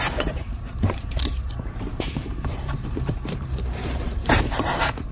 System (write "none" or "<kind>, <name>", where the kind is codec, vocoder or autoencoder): vocoder, BigVGAN v2